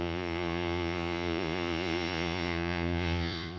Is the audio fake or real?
fake